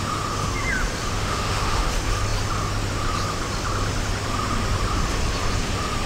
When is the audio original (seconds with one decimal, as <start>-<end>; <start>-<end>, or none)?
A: 0.0-1.1; 1.9-6.1